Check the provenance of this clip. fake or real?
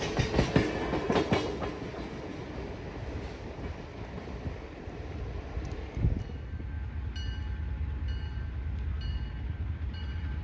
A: real